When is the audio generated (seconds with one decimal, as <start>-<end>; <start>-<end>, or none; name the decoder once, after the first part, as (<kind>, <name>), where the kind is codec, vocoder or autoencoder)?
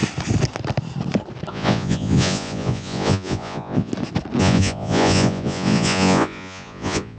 1.5-3.9 (vocoder, Vocos); 4.4-7.2